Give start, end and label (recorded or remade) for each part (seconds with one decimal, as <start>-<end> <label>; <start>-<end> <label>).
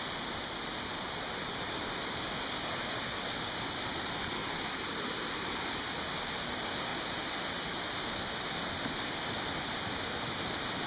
0.0-10.9 recorded